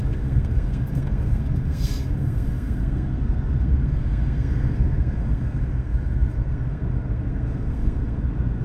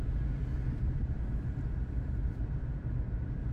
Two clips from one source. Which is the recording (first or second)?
second